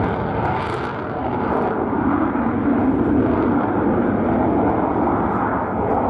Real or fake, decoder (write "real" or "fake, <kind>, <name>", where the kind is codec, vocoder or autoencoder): real